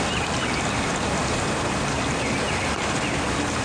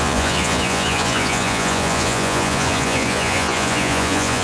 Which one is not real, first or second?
second